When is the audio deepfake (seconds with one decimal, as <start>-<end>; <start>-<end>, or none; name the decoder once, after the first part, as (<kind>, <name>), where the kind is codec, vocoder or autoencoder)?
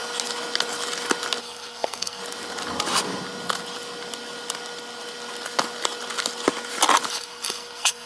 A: 1.4-2.2 (codec, SNAC); 7.1-8.1